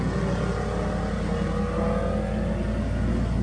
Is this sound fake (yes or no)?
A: no